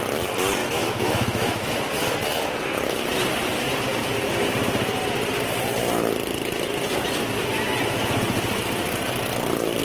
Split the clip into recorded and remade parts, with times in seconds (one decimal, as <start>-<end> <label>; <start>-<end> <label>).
0.0-0.6 recorded; 0.6-1.7 remade; 1.7-9.8 recorded